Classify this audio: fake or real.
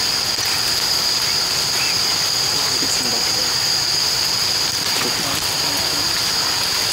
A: real